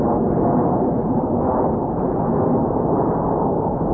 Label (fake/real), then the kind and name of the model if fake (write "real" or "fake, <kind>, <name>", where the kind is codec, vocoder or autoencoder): real